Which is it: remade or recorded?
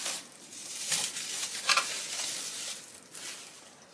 recorded